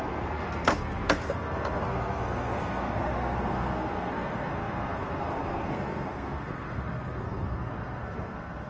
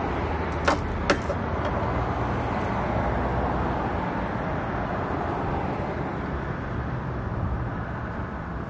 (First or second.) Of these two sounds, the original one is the second